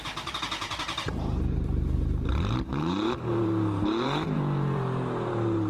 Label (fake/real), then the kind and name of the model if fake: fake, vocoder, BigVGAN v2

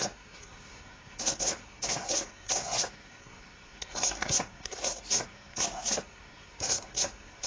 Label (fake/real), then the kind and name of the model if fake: fake, codec, SNAC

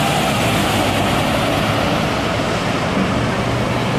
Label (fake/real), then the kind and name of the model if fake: real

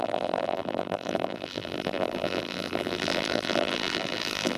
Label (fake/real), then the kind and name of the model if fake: fake, vocoder, BigVGAN v2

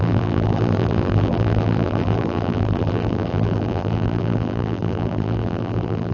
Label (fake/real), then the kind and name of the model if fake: fake, vocoder, BigVGAN v2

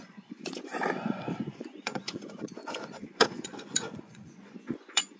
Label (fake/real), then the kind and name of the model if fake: fake, vocoder, Vocos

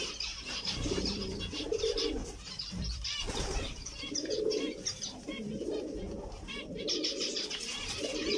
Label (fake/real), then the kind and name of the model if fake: fake, vocoder, BigVGAN v2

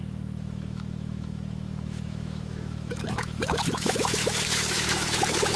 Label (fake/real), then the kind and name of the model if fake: fake, autoencoder, DAC-VAE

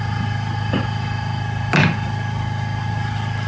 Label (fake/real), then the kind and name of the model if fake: real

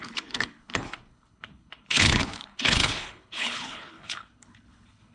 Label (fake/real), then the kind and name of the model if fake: fake, codec, HILCodec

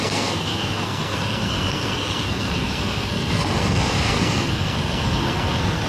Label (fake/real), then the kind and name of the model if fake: fake, codec, SNAC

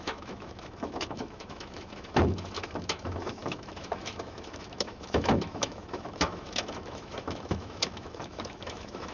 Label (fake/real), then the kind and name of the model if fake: fake, autoencoder, DAC-VAE